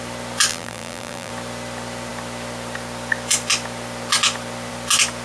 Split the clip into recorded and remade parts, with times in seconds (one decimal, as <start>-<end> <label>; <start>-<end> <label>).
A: 0.0-0.5 recorded; 0.5-1.3 remade; 1.3-5.2 recorded